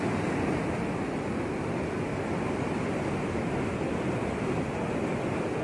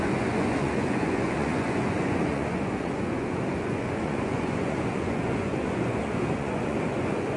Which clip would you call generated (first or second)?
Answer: second